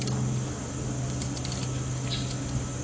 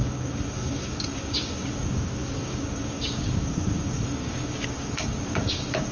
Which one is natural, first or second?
first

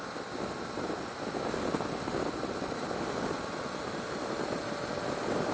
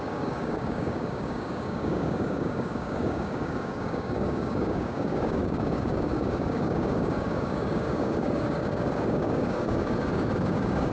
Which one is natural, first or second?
first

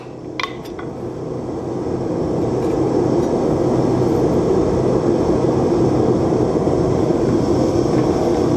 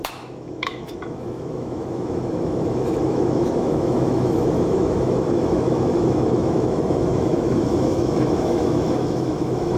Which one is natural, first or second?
first